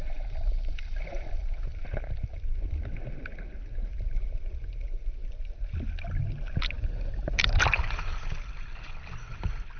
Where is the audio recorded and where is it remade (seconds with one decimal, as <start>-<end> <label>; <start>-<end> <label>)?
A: 0.0-1.4 remade; 1.4-3.8 recorded; 3.8-5.2 remade; 5.2-9.8 recorded